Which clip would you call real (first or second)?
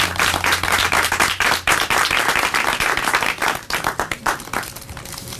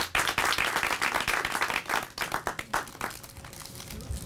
second